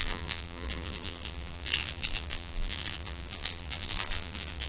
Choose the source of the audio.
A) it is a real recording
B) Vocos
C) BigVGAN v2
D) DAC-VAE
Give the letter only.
C